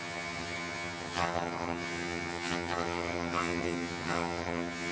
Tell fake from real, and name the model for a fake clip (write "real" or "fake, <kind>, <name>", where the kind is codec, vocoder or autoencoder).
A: fake, vocoder, HiFi-GAN